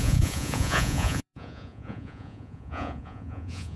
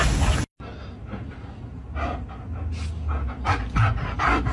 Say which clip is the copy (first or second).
first